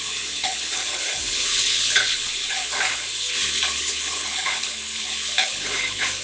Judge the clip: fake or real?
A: fake